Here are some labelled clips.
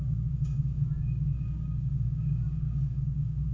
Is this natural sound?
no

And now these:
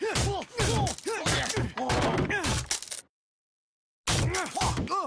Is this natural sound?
yes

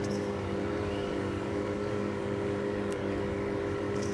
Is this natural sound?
no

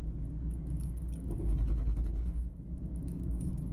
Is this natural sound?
no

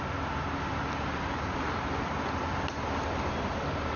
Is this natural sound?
yes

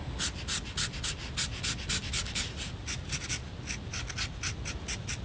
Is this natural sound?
yes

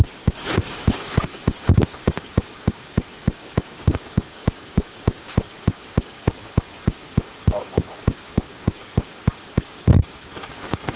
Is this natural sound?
no